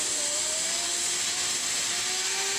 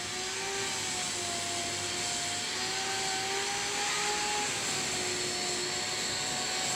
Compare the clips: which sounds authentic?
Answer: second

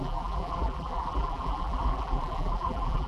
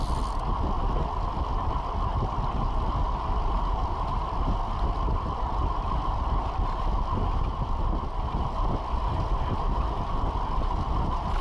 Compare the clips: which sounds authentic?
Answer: second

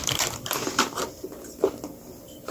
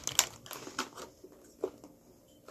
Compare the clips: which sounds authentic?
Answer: second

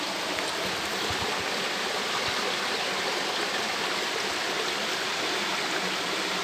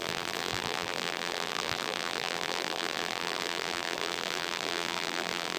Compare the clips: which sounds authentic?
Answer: first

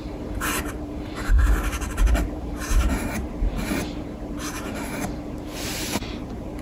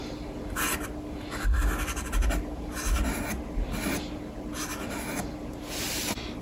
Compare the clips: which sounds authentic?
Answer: second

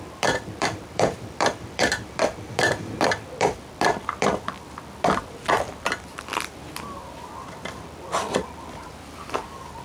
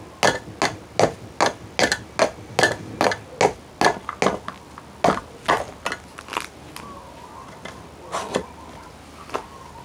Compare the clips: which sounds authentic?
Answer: second